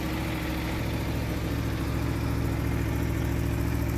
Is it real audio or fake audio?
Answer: real